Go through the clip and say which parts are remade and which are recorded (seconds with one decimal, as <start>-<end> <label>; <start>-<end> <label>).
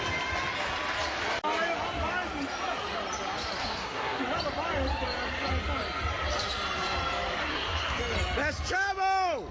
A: 0.0-3.6 recorded; 3.6-4.2 remade; 4.2-7.4 recorded; 7.4-8.0 remade; 8.0-9.5 recorded